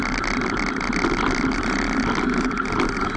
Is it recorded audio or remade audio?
recorded